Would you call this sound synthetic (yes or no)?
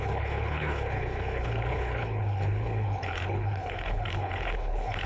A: yes